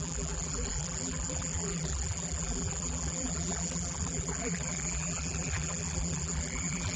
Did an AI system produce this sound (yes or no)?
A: yes